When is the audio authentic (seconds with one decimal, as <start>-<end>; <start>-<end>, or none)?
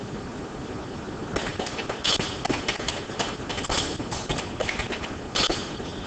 0.0-6.1